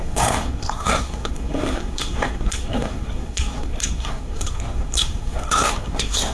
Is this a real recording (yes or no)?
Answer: no